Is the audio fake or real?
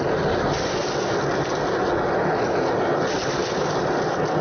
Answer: real